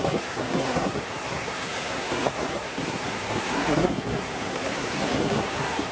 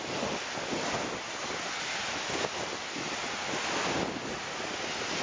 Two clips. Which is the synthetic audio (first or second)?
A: first